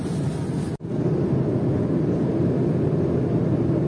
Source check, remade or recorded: recorded